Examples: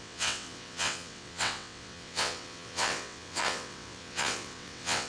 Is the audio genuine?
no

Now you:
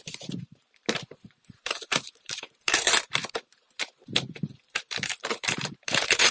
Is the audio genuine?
no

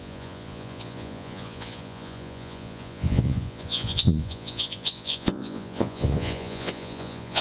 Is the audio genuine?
no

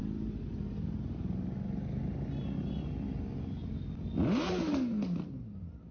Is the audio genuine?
yes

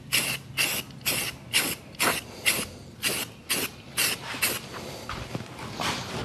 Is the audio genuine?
yes